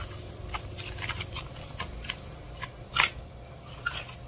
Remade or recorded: recorded